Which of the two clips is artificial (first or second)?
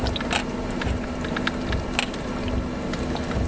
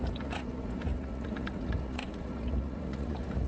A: second